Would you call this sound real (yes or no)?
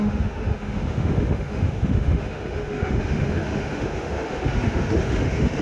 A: no